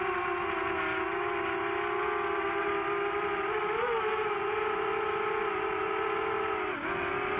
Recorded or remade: recorded